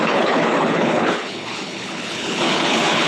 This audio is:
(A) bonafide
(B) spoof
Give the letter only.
B